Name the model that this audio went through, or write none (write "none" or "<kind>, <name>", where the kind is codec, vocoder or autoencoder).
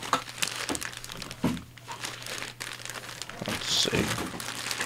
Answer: none